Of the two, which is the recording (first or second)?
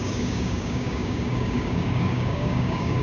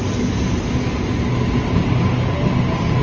second